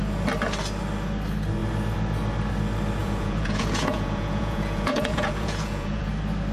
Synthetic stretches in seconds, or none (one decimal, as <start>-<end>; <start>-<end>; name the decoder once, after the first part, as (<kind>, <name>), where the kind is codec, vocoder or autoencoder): 3.0-6.1 (vocoder, Vocos)

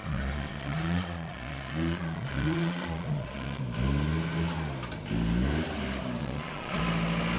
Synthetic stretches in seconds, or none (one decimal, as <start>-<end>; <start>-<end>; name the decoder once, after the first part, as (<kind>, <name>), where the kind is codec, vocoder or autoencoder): 0.0-3.6 (vocoder, Vocos); 6.2-6.8